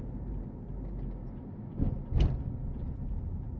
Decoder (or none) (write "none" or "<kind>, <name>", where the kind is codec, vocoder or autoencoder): none